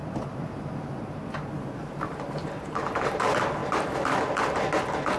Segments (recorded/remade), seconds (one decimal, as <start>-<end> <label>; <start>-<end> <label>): 0.0-0.5 remade; 0.5-1.8 recorded; 1.8-3.2 remade; 3.2-3.6 recorded; 3.6-4.2 remade; 4.2-5.2 recorded